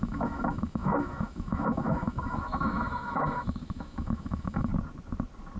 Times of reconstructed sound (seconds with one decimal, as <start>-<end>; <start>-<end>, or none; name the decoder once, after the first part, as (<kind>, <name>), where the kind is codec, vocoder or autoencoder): 0.0-4.7 (autoencoder, DAC-VAE)